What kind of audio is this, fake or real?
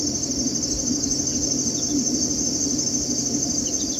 real